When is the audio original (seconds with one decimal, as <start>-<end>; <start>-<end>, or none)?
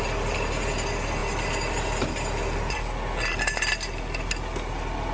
0.0-5.1